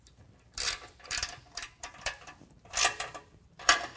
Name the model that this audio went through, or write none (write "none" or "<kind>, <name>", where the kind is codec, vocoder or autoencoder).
vocoder, BigVGAN v2